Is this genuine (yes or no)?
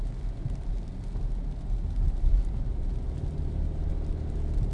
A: yes